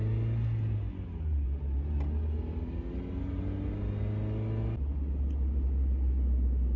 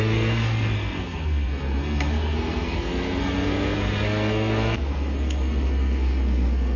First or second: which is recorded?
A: first